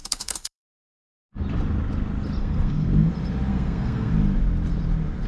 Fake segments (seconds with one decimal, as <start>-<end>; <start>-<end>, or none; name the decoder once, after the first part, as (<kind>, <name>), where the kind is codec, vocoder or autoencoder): 0.0-1.4 (codec, SNAC); 2.4-3.1; 3.5-4.1